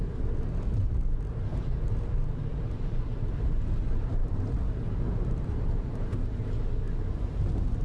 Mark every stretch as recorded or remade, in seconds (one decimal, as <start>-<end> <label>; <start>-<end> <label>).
0.0-2.5 recorded; 2.5-6.4 remade; 6.4-7.8 recorded